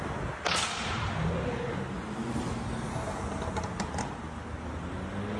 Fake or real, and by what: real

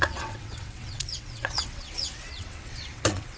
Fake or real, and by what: fake, vocoder, WaveNeXt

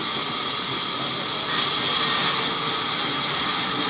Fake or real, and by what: real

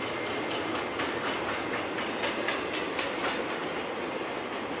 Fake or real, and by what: real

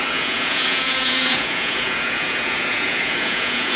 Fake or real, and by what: fake, vocoder, Vocos